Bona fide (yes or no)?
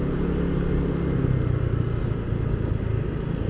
yes